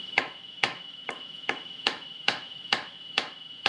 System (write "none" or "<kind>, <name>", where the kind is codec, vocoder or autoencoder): autoencoder, DAC-VAE